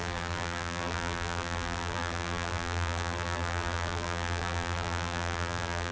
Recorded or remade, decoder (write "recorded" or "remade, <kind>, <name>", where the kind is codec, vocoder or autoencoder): remade, vocoder, BigVGAN v2